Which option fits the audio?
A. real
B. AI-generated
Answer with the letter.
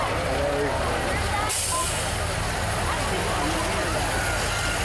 A